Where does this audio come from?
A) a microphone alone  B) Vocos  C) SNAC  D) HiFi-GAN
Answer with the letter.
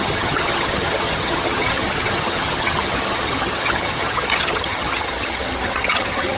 D